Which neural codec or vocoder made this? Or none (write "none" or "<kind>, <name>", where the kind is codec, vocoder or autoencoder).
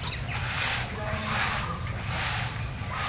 none